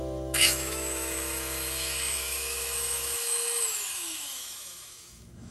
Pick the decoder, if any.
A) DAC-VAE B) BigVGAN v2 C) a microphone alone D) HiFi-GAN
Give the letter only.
A